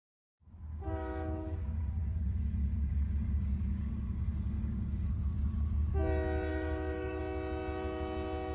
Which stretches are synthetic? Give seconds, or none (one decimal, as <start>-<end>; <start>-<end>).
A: 0.7-5.1; 6.5-7.2